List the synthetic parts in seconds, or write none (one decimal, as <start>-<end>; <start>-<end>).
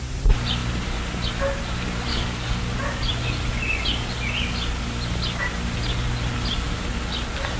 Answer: 2.1-2.6